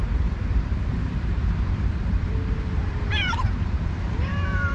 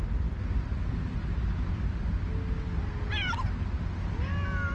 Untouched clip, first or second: second